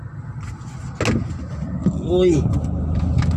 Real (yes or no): yes